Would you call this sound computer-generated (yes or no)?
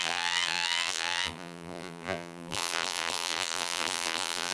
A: yes